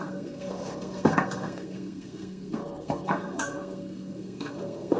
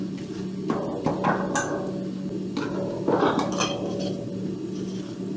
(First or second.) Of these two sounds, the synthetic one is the first